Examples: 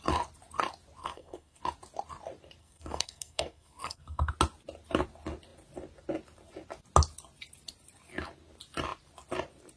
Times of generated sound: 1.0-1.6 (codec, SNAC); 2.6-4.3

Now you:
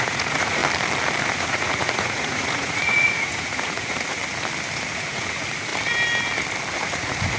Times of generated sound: 0.0-0.6 (vocoder, Vocos); 1.4-4.2; 4.9-5.7; 6.7-7.4

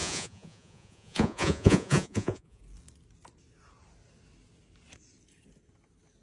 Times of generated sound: 0.0-2.6 (vocoder, Vocos)